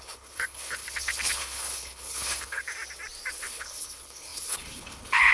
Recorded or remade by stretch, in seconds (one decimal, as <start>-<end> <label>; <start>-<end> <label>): 0.0-2.6 remade; 2.6-3.3 recorded; 3.3-5.3 remade